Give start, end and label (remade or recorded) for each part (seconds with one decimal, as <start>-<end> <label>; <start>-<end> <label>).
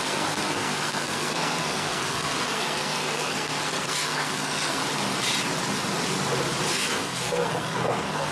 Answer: 0.0-4.8 remade; 4.8-6.7 recorded; 6.7-8.3 remade